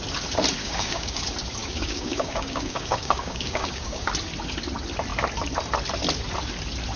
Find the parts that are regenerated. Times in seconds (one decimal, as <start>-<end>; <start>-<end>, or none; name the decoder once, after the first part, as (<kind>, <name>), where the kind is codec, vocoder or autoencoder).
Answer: 0.6-1.2 (codec, DAC); 1.6-4.1